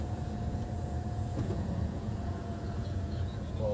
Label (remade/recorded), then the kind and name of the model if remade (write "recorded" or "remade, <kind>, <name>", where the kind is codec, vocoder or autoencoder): remade, vocoder, Vocos